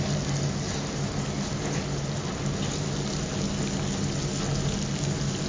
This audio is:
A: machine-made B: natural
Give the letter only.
B